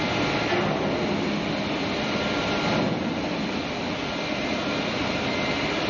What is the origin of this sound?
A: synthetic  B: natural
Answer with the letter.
B